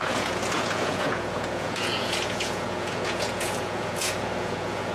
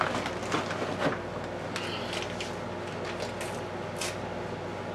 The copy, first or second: first